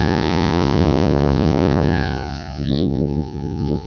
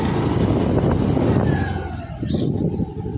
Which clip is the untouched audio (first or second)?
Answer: second